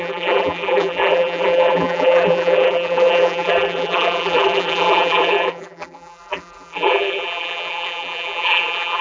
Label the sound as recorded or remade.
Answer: remade